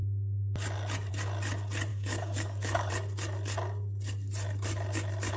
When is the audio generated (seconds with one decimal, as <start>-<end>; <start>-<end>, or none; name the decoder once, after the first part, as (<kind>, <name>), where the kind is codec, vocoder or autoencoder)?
1.9-2.9 (codec, DAC)